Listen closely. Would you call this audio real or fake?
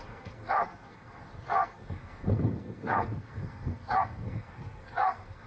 fake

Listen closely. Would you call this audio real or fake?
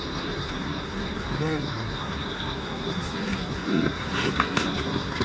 fake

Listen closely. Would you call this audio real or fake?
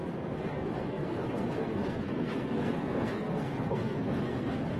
fake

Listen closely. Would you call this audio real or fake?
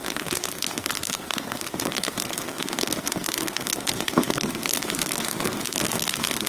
fake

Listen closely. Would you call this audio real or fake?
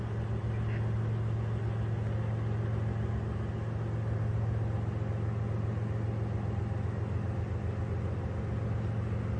real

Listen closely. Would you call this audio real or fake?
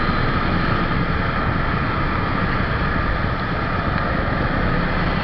real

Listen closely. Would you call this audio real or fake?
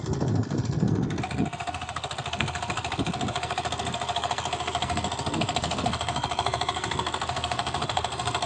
fake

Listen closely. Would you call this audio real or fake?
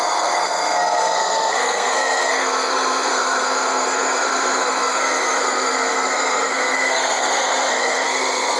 fake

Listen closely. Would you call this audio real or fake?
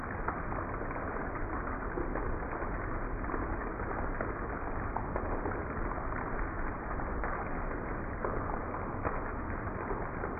real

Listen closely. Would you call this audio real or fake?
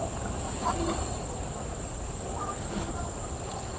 real